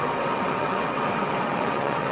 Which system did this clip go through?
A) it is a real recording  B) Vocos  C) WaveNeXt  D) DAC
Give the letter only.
C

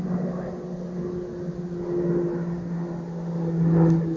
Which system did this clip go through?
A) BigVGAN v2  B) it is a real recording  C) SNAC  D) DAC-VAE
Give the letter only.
B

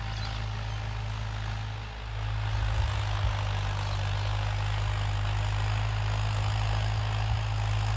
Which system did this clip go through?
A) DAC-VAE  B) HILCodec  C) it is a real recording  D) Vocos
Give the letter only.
C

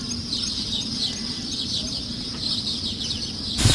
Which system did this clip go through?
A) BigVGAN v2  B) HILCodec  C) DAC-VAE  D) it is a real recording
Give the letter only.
D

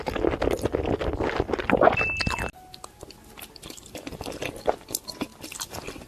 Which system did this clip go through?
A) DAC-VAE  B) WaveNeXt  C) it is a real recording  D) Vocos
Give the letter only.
C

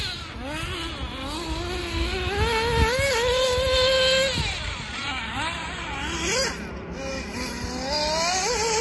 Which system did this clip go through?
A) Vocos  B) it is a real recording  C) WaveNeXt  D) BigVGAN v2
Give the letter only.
B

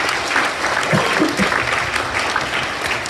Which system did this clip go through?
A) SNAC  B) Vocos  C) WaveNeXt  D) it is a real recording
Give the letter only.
D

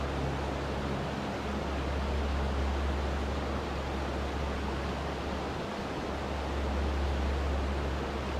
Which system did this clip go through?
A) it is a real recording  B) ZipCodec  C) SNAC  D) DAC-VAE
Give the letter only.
A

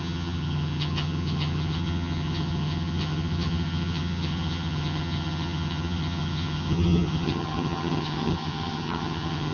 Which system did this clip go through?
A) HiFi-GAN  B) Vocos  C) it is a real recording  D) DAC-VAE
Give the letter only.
A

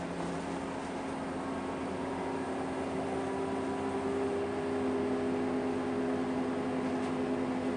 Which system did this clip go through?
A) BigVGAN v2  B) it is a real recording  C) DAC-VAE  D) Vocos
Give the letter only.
B